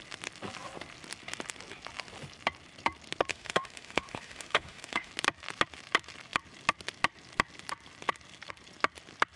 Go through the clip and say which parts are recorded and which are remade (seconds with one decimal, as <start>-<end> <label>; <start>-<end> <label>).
0.0-3.3 recorded; 3.3-5.1 remade; 5.1-9.4 recorded